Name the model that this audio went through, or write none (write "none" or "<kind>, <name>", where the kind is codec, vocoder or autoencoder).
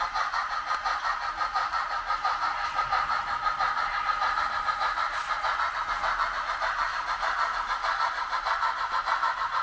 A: none